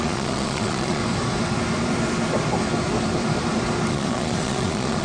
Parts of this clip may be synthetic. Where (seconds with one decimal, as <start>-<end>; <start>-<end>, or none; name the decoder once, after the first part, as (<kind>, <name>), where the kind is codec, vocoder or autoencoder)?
0.0-1.0 (vocoder, Vocos); 3.9-5.0